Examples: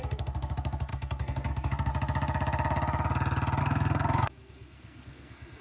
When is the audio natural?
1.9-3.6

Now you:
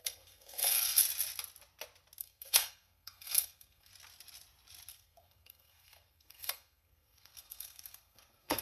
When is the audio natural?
1.0-2.2; 3.9-4.9

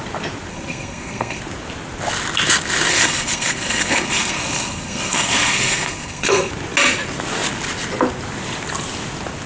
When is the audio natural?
0.0-0.5; 1.4-2.9; 6.5-9.5